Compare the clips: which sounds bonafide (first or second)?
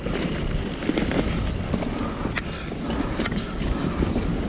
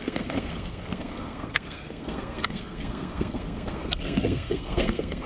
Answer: first